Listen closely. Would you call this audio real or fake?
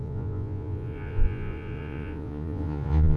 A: fake